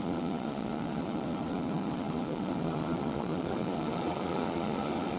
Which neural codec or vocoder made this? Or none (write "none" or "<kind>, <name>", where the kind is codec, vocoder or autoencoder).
vocoder, Vocos